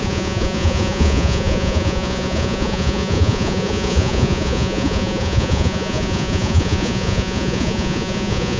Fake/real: fake